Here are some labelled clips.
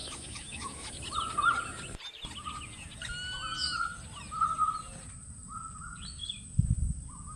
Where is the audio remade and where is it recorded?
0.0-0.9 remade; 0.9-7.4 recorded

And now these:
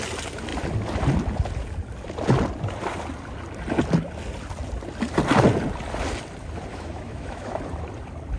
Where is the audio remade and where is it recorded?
0.0-6.7 recorded; 6.7-7.6 remade; 7.6-8.4 recorded